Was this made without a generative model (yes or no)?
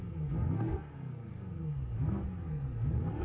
no